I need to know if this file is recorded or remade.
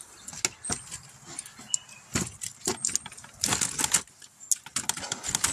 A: recorded